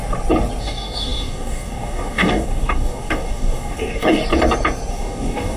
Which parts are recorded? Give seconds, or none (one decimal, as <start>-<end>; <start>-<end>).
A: 0.0-0.6; 4.2-4.9